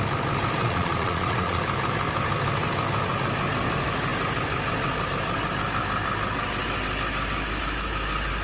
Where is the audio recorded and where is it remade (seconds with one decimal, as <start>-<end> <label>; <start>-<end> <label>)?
0.0-0.6 recorded; 0.6-1.6 remade; 1.6-8.4 recorded